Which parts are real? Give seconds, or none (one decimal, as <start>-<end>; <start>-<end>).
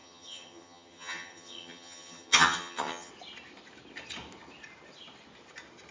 3.1-5.9